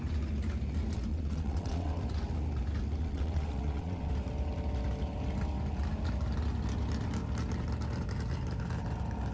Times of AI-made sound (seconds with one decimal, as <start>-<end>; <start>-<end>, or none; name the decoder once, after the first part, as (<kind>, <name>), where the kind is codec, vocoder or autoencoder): 1.1-2.0 (vocoder, WaveNeXt); 3.0-4.1